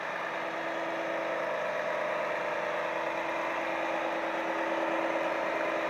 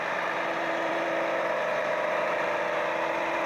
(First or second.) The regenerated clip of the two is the second